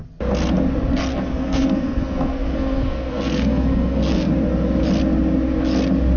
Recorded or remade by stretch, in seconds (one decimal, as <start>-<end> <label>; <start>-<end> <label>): 0.0-1.1 recorded; 1.1-4.3 remade; 4.3-6.2 recorded